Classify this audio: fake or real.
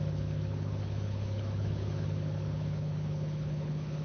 fake